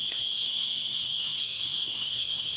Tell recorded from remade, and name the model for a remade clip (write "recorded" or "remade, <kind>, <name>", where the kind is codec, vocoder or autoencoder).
remade, codec, SNAC